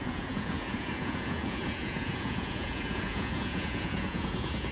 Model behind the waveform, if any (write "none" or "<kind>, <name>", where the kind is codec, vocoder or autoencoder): vocoder, Vocos